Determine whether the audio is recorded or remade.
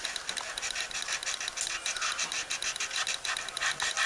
recorded